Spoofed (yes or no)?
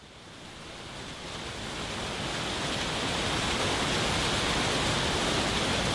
no